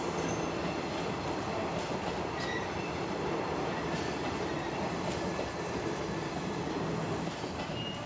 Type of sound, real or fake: real